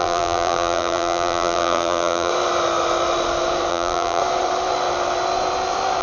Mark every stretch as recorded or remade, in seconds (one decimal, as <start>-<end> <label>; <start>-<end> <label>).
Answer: 0.0-2.3 remade; 2.3-3.7 recorded; 3.7-4.2 remade; 4.2-6.0 recorded